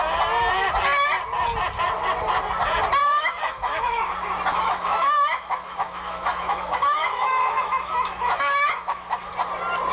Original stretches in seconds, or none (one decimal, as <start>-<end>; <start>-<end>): 0.0-3.0; 4.1-4.5; 9.3-9.9